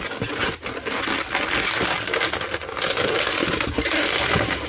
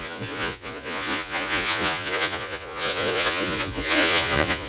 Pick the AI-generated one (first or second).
second